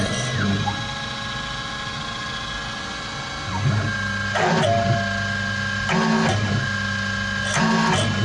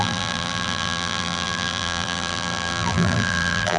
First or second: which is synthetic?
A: second